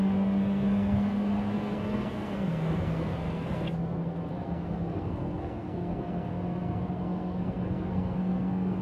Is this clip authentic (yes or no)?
no